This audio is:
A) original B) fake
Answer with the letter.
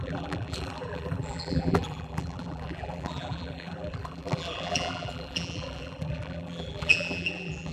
B